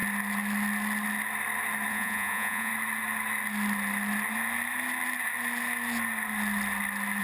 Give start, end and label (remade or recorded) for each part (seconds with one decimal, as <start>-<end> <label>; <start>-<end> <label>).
0.0-1.9 recorded; 1.9-2.7 remade; 2.7-7.2 recorded

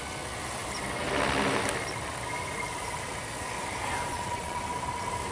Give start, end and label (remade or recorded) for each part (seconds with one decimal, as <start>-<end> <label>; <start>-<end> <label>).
0.0-4.1 recorded; 4.1-4.6 remade; 4.6-5.3 recorded